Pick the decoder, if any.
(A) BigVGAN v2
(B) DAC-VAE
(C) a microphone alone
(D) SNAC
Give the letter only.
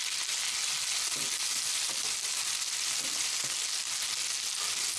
C